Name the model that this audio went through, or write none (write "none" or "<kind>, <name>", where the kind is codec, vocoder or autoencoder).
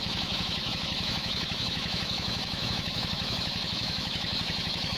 autoencoder, DAC-VAE